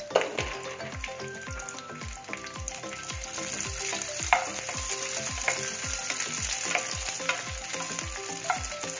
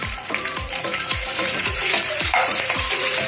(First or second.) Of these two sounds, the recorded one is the first